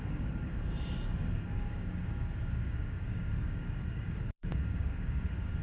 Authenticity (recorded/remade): remade